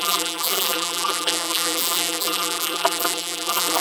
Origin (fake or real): fake